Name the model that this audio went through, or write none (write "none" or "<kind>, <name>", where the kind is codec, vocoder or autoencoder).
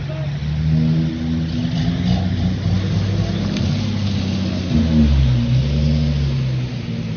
none